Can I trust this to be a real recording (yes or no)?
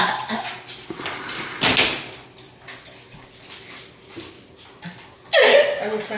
yes